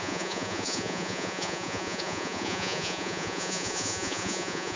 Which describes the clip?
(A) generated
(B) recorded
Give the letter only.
A